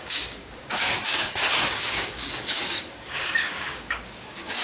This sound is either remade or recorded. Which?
remade